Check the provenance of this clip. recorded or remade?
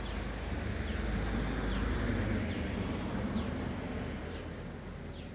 recorded